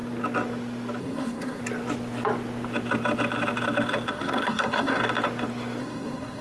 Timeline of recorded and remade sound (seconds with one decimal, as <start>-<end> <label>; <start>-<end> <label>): 0.0-1.0 recorded; 1.0-1.6 remade; 1.6-4.1 recorded; 4.1-5.0 remade; 5.0-5.8 recorded; 5.8-6.4 remade